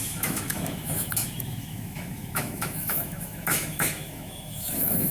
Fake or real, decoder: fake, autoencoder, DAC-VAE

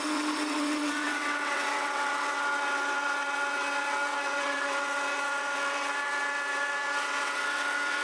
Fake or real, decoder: fake, vocoder, WaveNeXt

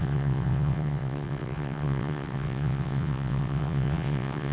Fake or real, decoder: fake, vocoder, WaveNeXt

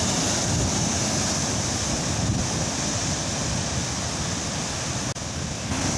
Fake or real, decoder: real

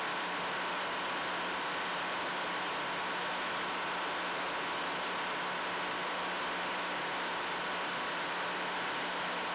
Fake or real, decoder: real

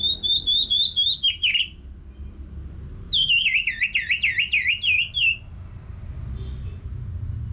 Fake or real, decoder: real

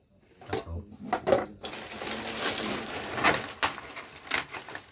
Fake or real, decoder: real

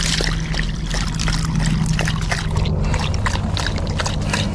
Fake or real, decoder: real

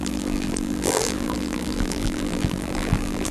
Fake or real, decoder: fake, vocoder, BigVGAN v2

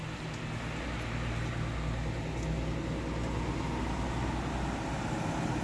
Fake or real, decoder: real